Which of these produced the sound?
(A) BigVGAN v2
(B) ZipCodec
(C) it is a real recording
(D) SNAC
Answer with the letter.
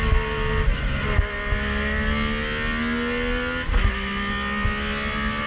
C